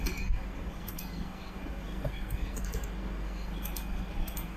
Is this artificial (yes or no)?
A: yes